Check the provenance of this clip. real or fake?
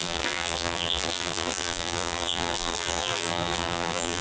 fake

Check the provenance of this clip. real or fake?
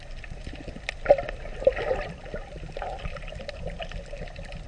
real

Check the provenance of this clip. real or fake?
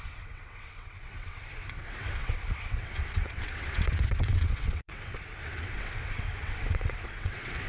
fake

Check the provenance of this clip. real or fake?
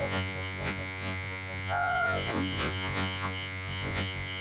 fake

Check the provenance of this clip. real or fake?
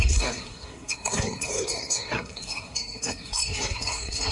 fake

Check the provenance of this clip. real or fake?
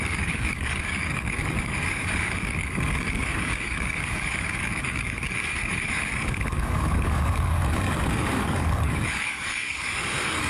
fake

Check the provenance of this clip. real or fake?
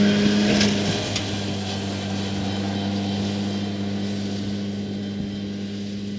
real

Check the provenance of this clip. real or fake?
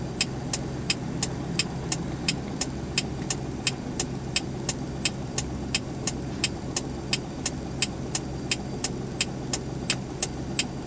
real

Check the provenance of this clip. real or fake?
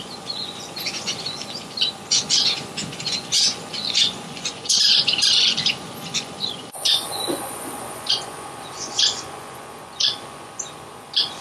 fake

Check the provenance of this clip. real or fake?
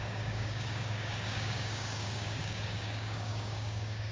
fake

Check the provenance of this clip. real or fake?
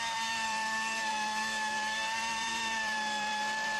fake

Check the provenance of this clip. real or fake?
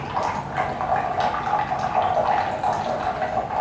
real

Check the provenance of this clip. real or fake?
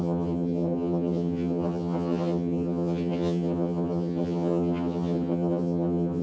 fake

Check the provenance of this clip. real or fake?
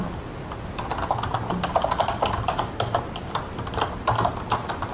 real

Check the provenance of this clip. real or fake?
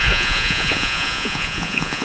fake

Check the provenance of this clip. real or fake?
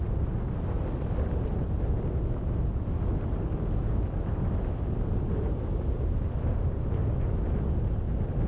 real